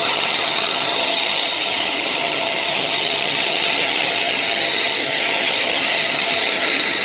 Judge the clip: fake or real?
fake